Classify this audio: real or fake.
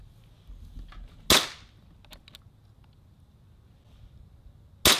real